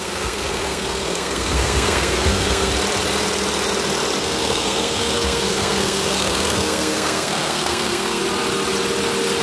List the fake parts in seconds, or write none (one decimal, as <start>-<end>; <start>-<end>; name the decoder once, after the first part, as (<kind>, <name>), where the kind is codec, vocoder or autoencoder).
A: 0.0-2.7 (codec, SNAC); 4.2-8.2